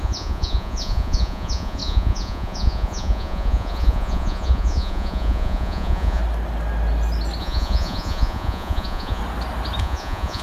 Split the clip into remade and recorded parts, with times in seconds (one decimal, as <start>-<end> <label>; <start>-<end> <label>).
0.0-6.2 remade; 6.2-7.4 recorded; 7.4-9.2 remade; 9.2-9.8 recorded; 9.8-10.4 remade